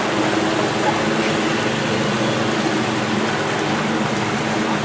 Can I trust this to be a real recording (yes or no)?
yes